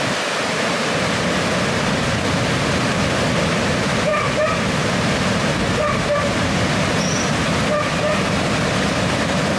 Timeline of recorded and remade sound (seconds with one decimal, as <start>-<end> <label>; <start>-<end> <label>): 0.0-4.1 recorded; 4.1-6.6 remade; 6.6-9.6 recorded